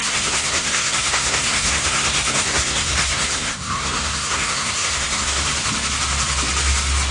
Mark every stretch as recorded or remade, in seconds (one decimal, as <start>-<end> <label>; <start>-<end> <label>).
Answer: 0.0-5.5 remade; 5.5-7.1 recorded